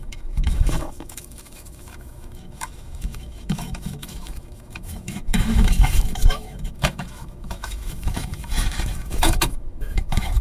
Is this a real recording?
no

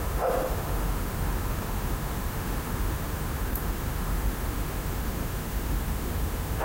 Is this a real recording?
no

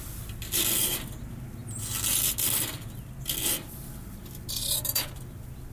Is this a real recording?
yes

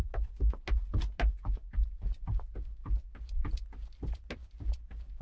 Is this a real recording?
yes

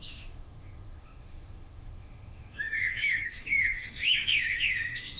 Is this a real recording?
no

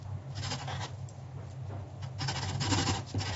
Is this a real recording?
yes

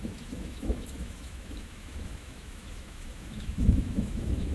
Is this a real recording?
no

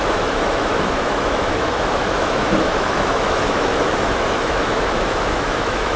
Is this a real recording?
no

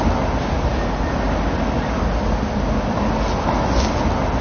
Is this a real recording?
yes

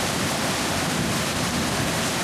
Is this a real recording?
yes